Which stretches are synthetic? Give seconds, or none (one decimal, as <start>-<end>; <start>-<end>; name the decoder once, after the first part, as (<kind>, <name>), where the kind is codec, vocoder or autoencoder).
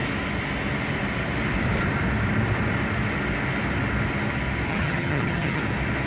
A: 4.7-5.6 (vocoder, HiFi-GAN)